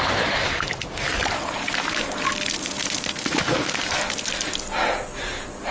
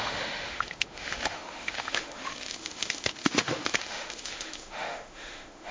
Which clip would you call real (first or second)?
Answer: first